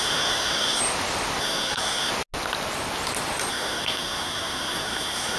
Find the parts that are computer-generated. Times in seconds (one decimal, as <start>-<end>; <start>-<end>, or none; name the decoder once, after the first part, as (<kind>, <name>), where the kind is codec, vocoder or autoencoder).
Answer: 0.0-0.8 (codec, SNAC); 1.4-2.1; 3.5-5.4